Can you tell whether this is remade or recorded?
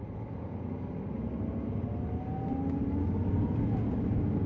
recorded